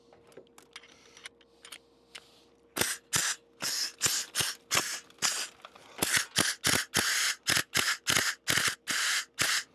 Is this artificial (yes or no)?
no